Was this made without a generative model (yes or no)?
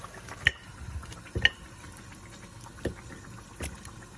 yes